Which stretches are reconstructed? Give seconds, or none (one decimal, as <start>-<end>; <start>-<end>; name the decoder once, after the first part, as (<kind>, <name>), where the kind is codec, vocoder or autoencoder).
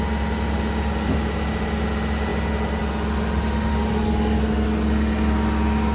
none